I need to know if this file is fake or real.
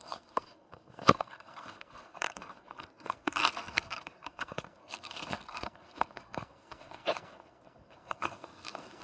fake